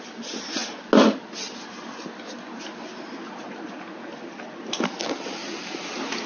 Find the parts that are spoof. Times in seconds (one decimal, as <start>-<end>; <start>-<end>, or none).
none